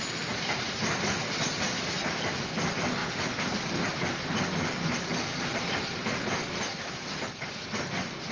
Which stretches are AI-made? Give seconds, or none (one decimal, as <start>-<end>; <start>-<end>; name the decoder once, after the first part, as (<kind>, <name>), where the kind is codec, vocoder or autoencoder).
none